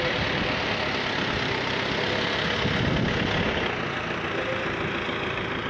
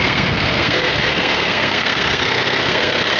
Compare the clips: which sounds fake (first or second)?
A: second